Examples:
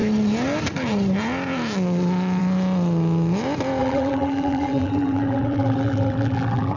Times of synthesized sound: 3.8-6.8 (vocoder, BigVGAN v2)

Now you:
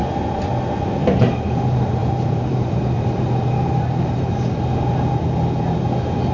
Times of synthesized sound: 0.0-0.7 (vocoder, BigVGAN v2); 2.0-4.2

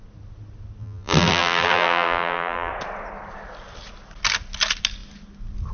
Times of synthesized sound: 0.8-2.7 (vocoder, BigVGAN v2)

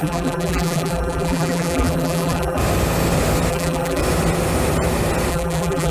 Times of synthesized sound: 0.0-2.6 (vocoder, BigVGAN v2); 3.5-4.0; 5.3-5.9

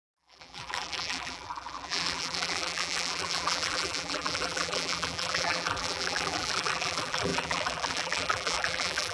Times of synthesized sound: 0.0-9.1 (vocoder, BigVGAN v2)